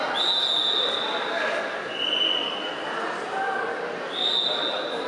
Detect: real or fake real